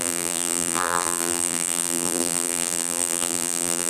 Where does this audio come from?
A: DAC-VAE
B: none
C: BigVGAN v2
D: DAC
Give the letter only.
C